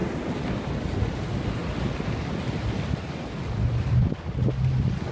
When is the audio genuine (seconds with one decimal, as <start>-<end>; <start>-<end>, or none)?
0.0-5.1